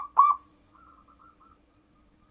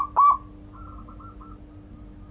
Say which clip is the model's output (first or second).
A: first